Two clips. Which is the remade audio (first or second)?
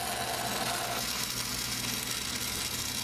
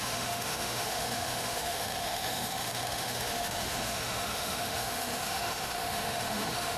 second